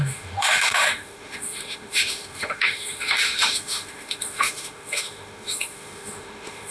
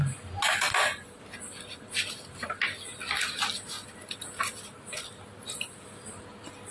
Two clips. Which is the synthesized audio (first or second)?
first